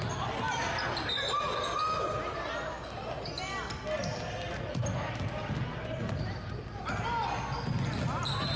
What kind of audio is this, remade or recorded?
recorded